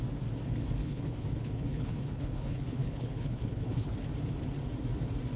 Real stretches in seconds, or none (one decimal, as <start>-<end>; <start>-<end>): 0.0-0.8; 3.9-5.4